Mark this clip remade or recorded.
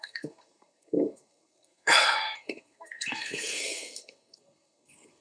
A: remade